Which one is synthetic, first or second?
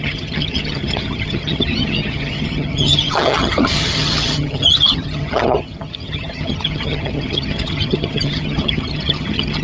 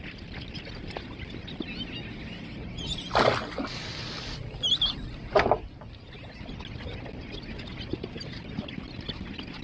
first